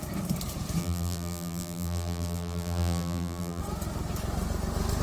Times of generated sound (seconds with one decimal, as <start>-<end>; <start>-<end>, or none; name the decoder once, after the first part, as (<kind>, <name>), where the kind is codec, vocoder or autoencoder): 0.8-3.6 (vocoder, BigVGAN v2)